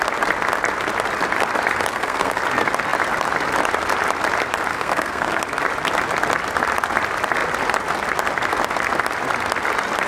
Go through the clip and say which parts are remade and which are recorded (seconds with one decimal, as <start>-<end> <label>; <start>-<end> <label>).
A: 0.0-1.9 recorded; 1.9-2.4 remade; 2.4-4.7 recorded; 4.7-5.4 remade; 5.4-10.1 recorded